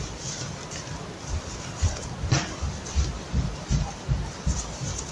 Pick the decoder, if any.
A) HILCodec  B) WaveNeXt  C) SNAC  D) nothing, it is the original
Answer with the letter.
D